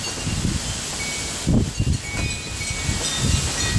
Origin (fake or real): real